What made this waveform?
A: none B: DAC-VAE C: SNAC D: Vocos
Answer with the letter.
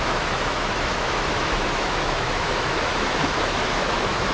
B